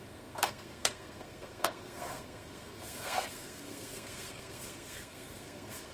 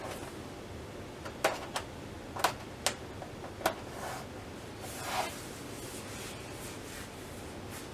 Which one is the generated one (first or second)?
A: first